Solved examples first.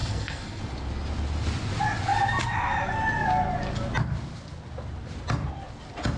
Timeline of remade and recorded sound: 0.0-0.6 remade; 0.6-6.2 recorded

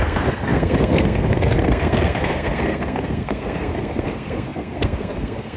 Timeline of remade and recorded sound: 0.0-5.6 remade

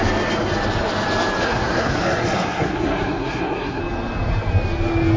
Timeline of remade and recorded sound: 0.0-1.4 recorded; 1.4-3.8 remade; 3.8-5.2 recorded